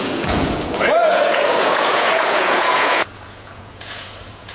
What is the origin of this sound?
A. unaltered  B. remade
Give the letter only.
B